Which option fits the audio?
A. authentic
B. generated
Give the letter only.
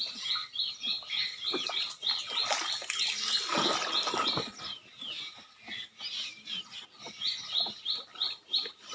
A